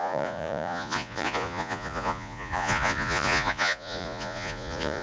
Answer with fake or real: fake